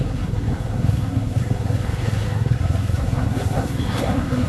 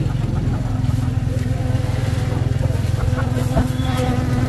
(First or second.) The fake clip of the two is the first